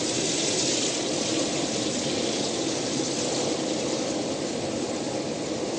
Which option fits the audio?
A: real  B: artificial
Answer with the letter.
A